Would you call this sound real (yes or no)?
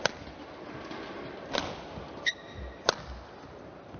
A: yes